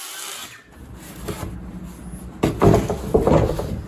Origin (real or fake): real